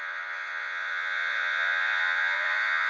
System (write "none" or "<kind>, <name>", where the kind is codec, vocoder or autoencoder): vocoder, Vocos